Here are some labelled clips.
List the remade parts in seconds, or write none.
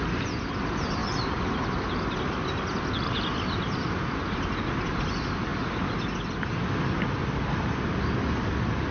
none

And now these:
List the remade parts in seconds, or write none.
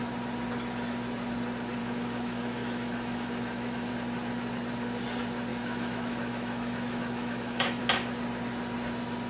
1.8-3.9 (autoencoder, DAC-VAE); 5.5-7.8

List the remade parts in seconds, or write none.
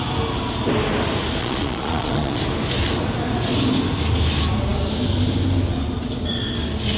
1.4-2.4 (vocoder, Vocos)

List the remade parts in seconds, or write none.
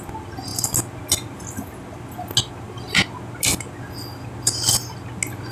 none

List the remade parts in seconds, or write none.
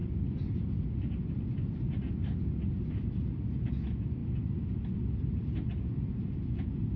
none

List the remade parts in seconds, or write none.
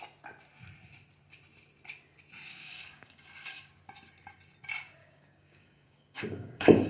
2.5-3.7 (codec, DAC); 5.0-6.9